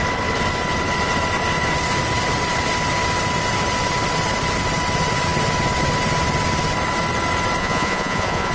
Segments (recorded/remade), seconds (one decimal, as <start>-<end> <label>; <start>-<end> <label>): 0.0-7.6 recorded; 7.6-8.5 remade